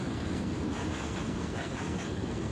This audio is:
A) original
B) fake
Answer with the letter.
B